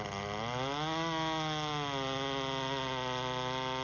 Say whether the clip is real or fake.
real